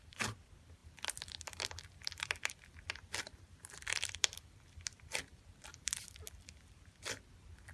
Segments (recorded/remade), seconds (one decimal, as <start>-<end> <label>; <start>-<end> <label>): 0.0-7.7 remade